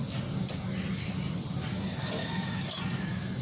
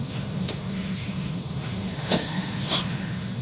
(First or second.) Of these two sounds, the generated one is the second